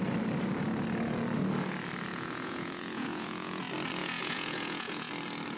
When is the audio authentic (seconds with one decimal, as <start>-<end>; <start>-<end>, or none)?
0.0-2.1; 3.6-4.0; 5.1-5.6